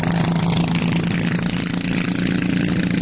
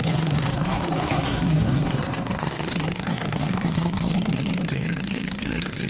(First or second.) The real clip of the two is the first